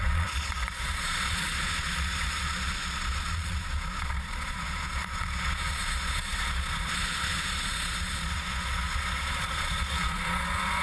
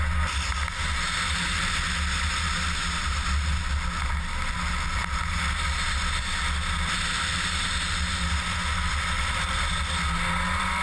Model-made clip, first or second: first